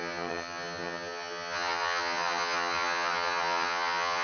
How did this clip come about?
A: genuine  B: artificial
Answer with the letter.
B